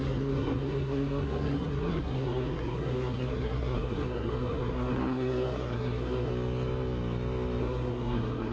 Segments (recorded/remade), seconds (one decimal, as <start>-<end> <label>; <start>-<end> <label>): 0.0-6.3 remade; 6.3-7.6 recorded; 7.6-8.5 remade